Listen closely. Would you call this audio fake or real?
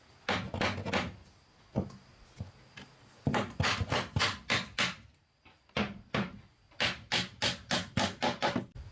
real